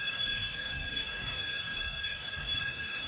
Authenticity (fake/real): fake